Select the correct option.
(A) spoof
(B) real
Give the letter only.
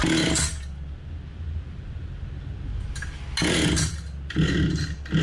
B